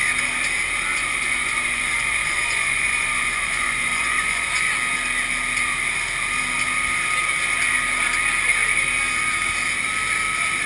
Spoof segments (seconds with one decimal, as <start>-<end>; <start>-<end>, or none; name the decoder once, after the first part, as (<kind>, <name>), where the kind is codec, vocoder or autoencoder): 0.9-4.7 (vocoder, Vocos)